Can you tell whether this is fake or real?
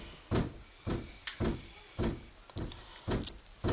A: real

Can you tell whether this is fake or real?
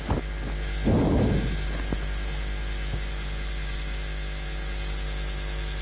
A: real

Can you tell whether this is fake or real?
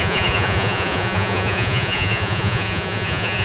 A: fake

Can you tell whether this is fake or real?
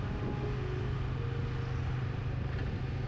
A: real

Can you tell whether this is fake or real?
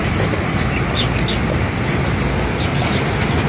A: real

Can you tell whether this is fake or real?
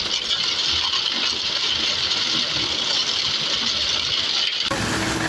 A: real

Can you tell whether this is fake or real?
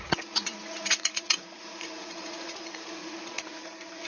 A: fake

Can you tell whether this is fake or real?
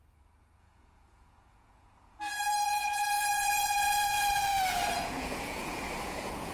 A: fake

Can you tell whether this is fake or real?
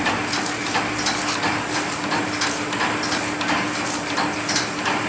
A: real